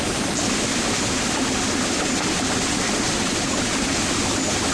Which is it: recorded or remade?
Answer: recorded